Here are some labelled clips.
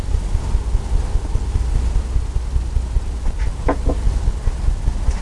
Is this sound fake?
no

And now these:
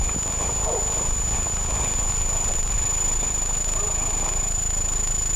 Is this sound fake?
no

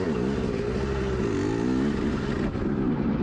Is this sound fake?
no